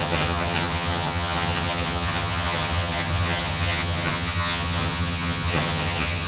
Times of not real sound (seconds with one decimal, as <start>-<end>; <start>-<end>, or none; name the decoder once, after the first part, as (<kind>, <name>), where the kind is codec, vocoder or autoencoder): 0.0-6.3 (vocoder, HiFi-GAN)